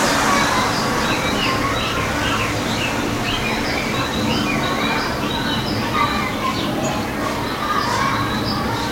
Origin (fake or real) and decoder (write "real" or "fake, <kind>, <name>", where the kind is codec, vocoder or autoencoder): real